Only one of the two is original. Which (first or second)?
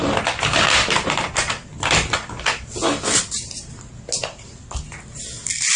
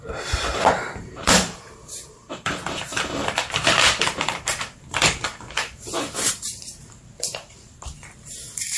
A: first